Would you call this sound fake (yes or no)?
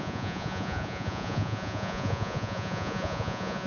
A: yes